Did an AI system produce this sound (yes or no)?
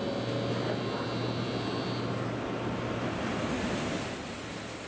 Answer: no